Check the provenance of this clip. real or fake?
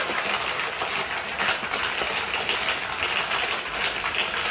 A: real